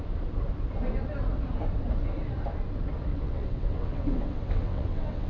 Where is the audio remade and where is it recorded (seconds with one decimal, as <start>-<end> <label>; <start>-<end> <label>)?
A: 0.0-3.1 recorded; 3.1-5.3 remade